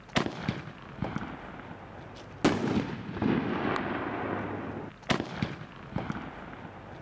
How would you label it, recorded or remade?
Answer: recorded